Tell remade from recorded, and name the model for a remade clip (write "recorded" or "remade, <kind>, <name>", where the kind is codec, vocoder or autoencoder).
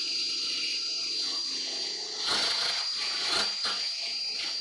recorded